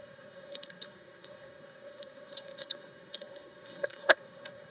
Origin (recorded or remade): remade